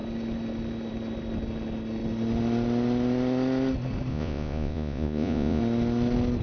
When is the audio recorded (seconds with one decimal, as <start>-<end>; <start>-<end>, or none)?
0.0-4.1; 5.6-6.4